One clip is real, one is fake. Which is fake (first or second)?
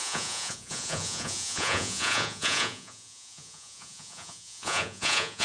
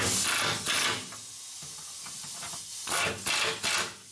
first